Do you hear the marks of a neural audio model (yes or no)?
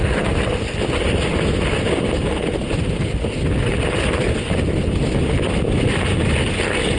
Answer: no